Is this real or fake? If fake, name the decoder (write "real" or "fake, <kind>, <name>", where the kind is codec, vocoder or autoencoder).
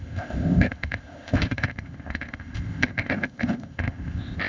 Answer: fake, codec, ZipCodec